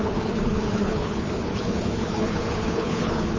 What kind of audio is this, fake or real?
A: fake